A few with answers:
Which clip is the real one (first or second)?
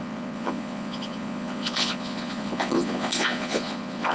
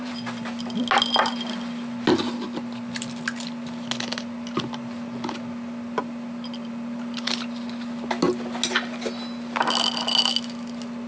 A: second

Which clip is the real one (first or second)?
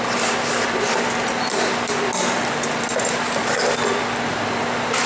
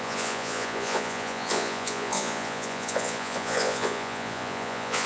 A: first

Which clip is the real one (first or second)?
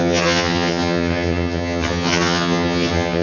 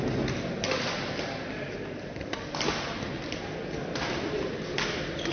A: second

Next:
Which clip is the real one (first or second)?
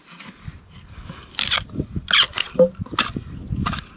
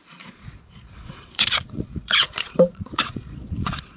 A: first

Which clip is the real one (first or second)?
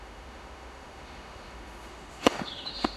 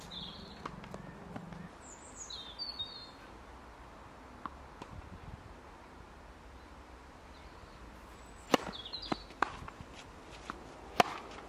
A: second